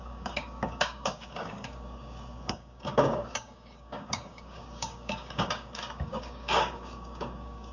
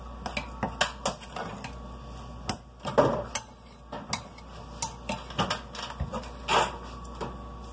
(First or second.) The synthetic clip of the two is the first